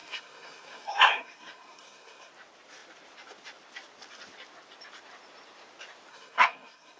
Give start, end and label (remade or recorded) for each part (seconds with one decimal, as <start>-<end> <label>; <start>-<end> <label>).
0.0-2.3 remade; 2.3-6.1 recorded; 6.1-7.0 remade